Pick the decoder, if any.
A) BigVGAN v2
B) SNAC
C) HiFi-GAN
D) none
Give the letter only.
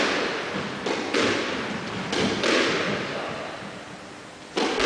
D